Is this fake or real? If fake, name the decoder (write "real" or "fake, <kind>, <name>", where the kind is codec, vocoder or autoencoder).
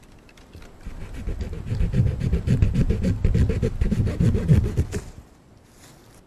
real